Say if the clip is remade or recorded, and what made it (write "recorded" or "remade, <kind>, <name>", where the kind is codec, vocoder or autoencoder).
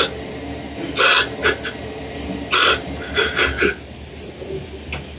recorded